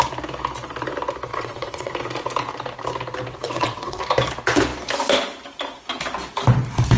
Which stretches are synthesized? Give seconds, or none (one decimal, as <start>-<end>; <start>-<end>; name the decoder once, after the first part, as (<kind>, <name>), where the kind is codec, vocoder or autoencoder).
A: 1.3-1.9 (vocoder, WaveNeXt); 3.3-4.0